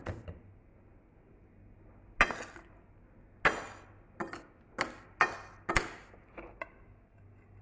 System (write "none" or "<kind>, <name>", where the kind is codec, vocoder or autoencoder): none